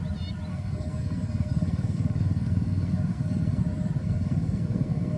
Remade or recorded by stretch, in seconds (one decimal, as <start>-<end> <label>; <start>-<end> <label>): 0.0-0.5 recorded; 0.5-3.6 remade; 3.6-4.0 recorded; 4.0-5.2 remade